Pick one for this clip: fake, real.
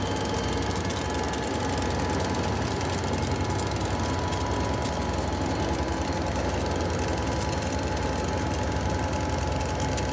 real